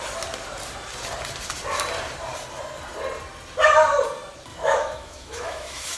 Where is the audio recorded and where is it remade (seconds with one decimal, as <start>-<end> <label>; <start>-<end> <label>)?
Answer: 0.0-4.5 recorded; 4.5-6.0 remade